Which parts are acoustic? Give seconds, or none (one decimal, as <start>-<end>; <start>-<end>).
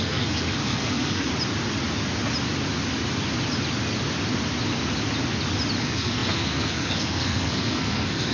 1.3-5.8